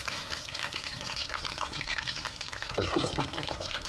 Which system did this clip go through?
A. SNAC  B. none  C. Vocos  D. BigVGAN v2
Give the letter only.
A